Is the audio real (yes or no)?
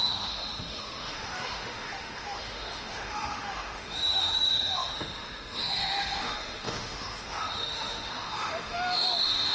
no